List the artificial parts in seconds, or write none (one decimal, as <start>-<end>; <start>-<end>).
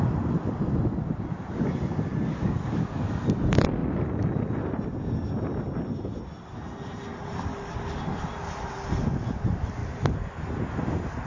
2.3-3.2; 7.5-8.0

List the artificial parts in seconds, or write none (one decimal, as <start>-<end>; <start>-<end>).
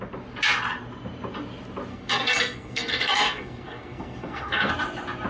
1.9-4.7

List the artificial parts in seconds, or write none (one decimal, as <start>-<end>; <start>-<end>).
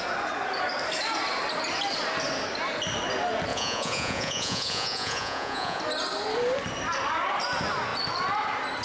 3.5-5.8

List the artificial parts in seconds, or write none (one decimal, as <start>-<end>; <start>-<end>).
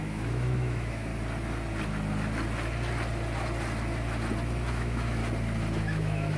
0.0-1.1; 4.7-5.2; 5.8-6.4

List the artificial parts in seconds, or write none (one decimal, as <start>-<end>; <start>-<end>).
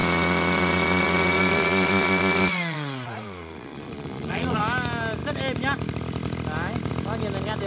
0.0-4.6